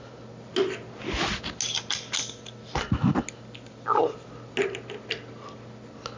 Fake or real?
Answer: real